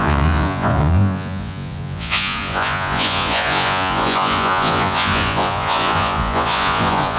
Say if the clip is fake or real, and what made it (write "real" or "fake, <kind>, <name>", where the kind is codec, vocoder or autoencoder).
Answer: fake, vocoder, Vocos